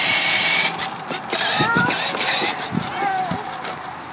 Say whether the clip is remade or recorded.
recorded